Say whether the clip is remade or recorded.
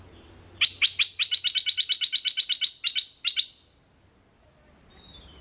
recorded